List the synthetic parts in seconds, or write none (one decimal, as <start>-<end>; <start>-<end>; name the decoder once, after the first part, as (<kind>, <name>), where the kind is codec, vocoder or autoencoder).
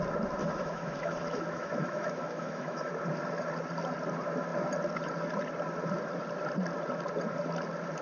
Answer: 0.4-2.9 (autoencoder, DAC-VAE)